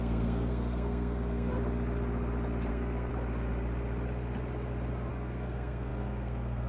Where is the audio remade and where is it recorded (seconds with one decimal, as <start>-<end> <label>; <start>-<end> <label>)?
0.0-1.5 remade; 1.5-2.7 recorded; 2.7-3.1 remade; 3.1-5.1 recorded; 5.1-6.7 remade